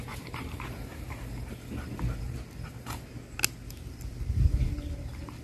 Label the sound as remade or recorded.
recorded